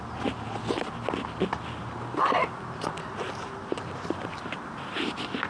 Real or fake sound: real